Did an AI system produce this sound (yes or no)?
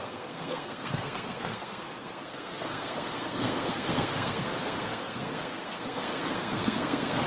yes